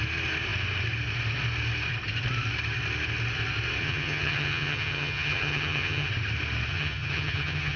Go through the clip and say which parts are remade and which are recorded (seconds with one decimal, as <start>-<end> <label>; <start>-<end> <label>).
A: 0.0-3.8 recorded; 3.8-6.1 remade; 6.1-6.7 recorded; 6.7-7.8 remade

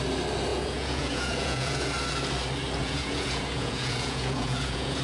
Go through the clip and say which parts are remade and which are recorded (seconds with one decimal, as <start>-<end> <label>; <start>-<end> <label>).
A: 0.0-0.5 recorded; 0.5-1.9 remade; 1.9-2.8 recorded; 2.8-5.0 remade

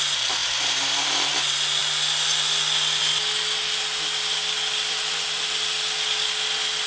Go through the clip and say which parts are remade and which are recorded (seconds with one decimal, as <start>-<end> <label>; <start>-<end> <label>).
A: 0.0-6.9 recorded

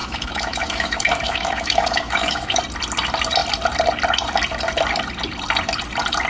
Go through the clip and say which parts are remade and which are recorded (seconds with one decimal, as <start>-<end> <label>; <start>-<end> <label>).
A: 0.0-2.6 remade; 2.6-6.3 recorded